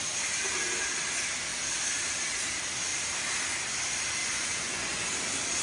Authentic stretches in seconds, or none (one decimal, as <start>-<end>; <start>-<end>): 0.0-4.2; 5.0-5.6